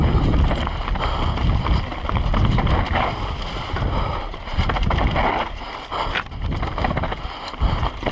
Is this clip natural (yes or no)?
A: yes